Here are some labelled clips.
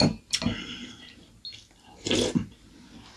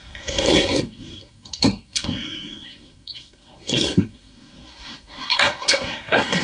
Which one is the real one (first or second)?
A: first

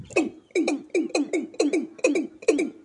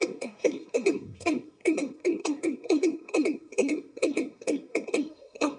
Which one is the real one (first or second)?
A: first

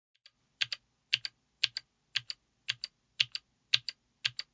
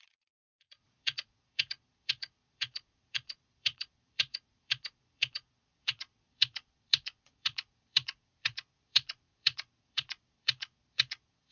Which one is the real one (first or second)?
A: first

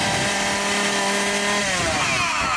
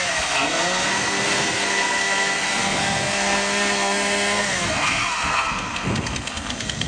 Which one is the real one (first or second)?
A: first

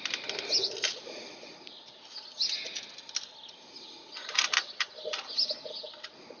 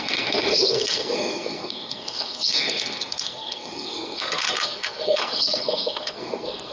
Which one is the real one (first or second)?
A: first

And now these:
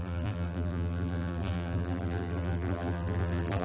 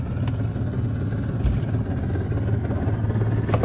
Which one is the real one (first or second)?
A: second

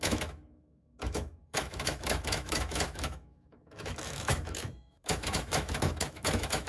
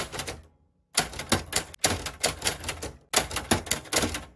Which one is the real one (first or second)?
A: second